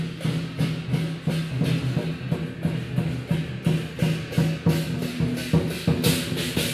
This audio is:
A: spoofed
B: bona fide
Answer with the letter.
B